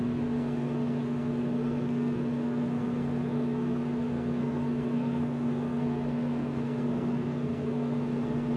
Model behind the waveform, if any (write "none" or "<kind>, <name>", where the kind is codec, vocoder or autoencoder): codec, SNAC